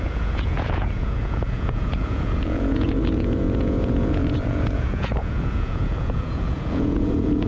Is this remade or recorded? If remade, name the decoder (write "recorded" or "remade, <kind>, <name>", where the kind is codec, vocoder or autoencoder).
remade, vocoder, Vocos